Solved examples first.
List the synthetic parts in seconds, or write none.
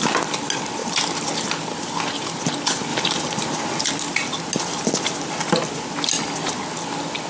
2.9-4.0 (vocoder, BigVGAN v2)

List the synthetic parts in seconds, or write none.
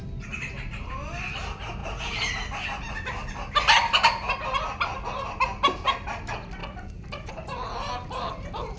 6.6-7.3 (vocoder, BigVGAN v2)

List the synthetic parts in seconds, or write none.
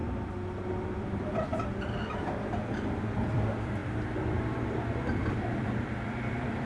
0.8-6.7 (vocoder, BigVGAN v2)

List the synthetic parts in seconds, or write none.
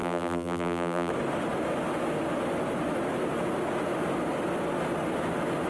0.0-1.1 (vocoder, BigVGAN v2)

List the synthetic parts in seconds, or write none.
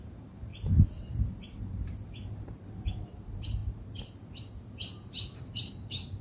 0.0-3.6 (vocoder, BigVGAN v2); 5.1-6.2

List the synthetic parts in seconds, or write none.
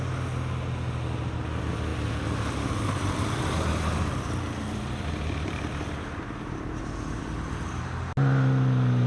1.9-6.8 (vocoder, BigVGAN v2); 7.2-7.7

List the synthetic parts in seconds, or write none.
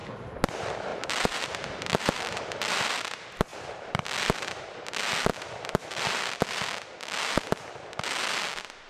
0.9-2.8 (vocoder, BigVGAN v2)